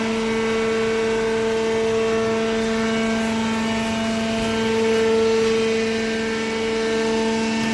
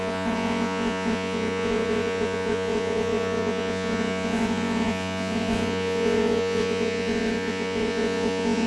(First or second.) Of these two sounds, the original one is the first